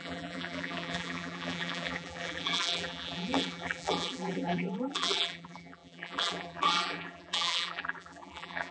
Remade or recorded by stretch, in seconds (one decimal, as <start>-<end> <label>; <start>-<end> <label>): 0.0-8.7 remade